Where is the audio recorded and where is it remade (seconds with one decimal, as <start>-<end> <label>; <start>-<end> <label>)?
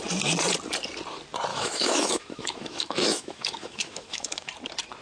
0.0-1.5 recorded; 1.5-4.5 remade; 4.5-5.0 recorded